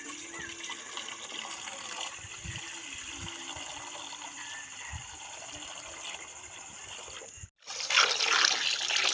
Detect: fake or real real